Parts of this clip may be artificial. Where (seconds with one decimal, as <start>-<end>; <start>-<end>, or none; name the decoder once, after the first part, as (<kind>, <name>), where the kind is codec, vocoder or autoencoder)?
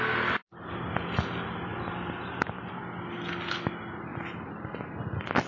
none